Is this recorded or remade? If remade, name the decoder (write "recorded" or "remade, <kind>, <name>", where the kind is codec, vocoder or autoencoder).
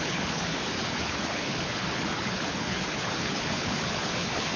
remade, codec, HILCodec